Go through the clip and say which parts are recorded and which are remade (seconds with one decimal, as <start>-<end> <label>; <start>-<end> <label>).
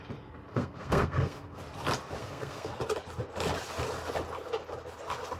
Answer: 0.0-0.5 recorded; 0.5-1.6 remade; 1.6-2.2 recorded; 2.2-2.7 remade; 2.7-5.4 recorded